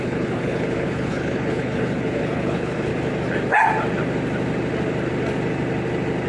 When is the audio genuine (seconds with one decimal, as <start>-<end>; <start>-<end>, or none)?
2.9-6.3